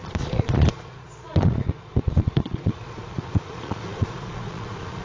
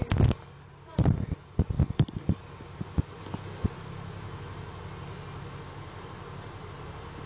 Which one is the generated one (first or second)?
first